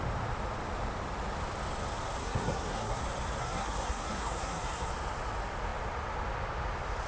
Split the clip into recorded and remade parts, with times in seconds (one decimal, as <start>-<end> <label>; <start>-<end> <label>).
0.0-2.2 recorded; 2.2-3.0 remade; 3.0-3.4 recorded; 3.4-4.9 remade; 4.9-7.1 recorded